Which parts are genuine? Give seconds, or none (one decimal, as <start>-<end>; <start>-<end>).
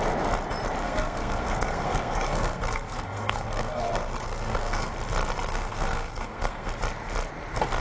0.0-0.8; 4.9-5.5; 6.7-7.8